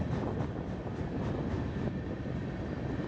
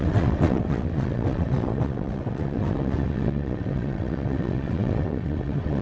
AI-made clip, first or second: second